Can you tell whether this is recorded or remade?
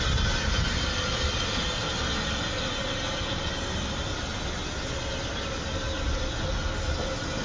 recorded